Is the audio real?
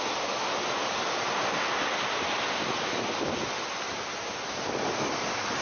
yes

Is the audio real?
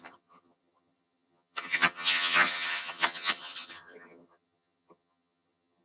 no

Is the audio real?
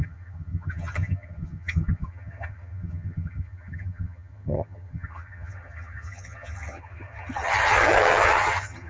no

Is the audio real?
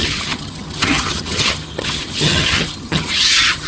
no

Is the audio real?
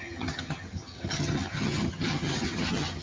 no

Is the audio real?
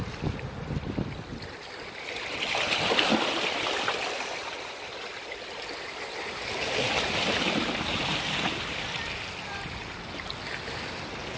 yes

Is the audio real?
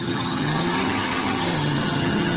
no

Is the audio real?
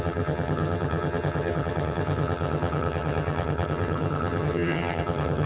no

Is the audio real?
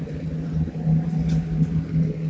yes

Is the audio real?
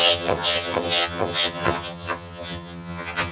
no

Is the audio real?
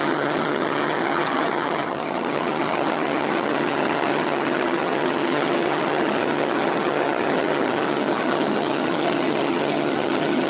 no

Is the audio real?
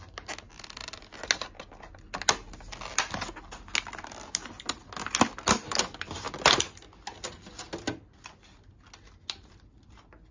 yes